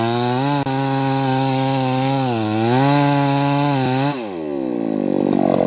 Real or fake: real